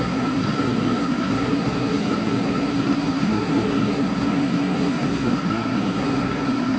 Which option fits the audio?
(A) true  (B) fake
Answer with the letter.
B